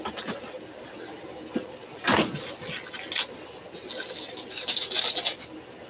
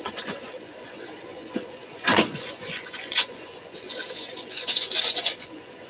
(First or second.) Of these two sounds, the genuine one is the first